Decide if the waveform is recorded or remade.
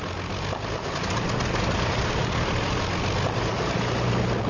recorded